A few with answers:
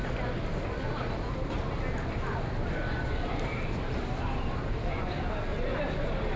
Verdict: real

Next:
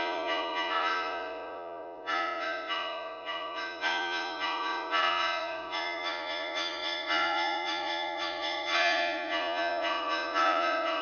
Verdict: fake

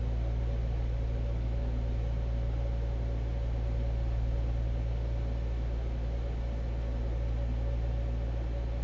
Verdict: real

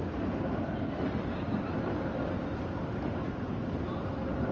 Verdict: real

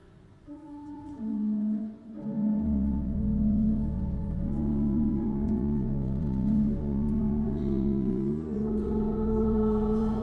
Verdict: fake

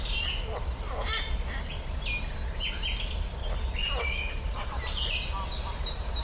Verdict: real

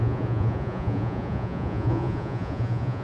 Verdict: fake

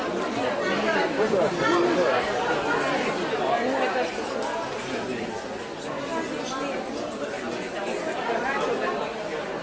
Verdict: real